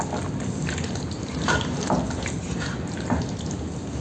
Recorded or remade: recorded